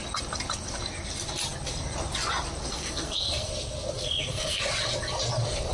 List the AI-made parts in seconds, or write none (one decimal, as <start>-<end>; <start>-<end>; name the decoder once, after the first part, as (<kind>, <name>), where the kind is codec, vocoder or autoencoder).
2.7-3.5 (codec, SNAC); 4.0-4.6

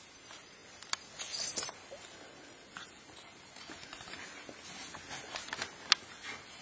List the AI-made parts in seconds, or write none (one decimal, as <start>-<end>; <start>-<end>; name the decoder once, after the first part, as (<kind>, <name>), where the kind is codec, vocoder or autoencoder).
none

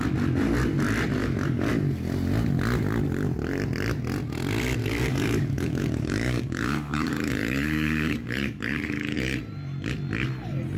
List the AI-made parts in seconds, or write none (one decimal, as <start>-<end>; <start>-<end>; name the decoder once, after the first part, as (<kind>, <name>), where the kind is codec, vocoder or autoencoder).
1.2-1.7 (codec, DAC); 4.8-9.4

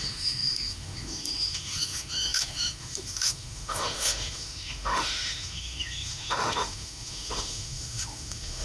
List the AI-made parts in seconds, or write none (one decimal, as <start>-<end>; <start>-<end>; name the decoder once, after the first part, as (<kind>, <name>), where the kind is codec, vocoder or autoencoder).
0.0-8.6 (autoencoder, DAC-VAE)

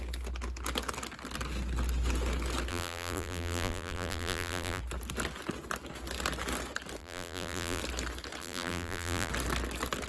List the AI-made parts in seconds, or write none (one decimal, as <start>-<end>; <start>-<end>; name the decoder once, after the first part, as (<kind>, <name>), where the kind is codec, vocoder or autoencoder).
2.7-4.8 (vocoder, BigVGAN v2); 7.0-7.8; 8.4-9.3

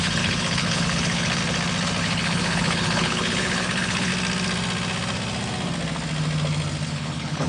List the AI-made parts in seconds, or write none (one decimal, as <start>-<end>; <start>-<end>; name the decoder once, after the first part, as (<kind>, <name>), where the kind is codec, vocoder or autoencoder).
0.0-1.4 (codec, HILCodec); 2.0-4.1; 6.9-7.5

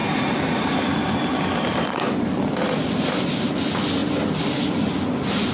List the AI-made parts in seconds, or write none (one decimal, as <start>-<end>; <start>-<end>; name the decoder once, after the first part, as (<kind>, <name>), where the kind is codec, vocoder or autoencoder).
none

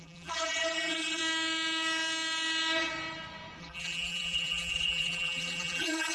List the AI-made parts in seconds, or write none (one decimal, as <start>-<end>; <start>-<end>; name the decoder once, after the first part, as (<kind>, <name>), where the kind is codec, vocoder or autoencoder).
0.0-1.2 (vocoder, BigVGAN v2); 3.6-6.1